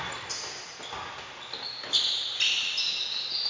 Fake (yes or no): no